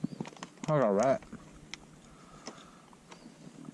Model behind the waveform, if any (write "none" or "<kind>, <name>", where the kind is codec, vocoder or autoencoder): none